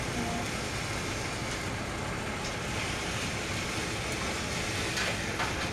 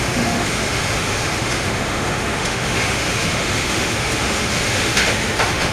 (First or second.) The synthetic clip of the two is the second